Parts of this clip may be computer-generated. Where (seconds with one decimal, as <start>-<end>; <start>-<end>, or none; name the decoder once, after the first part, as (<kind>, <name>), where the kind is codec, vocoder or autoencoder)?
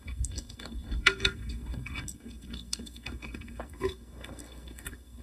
0.0-5.2 (codec, SNAC)